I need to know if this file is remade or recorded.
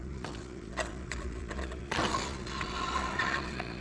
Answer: remade